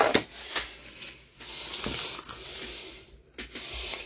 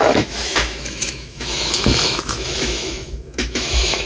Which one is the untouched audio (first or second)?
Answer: first